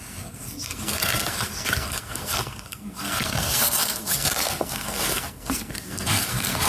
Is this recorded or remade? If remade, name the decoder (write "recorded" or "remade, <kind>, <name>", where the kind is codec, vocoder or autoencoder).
remade, codec, SNAC